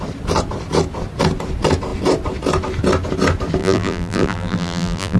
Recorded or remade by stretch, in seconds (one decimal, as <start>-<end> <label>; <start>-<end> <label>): 0.0-3.6 recorded; 3.6-5.2 remade